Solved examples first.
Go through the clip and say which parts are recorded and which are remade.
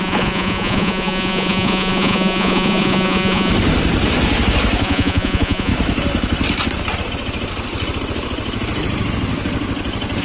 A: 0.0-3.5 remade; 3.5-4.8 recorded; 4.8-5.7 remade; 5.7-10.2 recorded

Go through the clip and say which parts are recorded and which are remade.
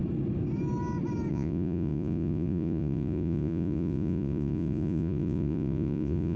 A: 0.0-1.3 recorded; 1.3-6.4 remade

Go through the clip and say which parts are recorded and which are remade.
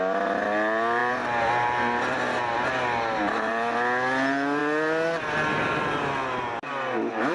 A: 0.0-7.3 recorded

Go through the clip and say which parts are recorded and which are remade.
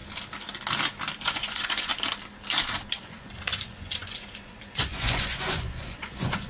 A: 0.0-1.3 recorded; 1.3-1.9 remade; 1.9-2.9 recorded; 2.9-6.5 remade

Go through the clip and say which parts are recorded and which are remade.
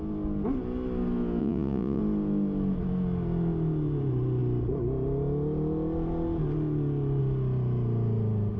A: 0.0-1.4 recorded; 1.4-2.0 remade; 2.0-8.6 recorded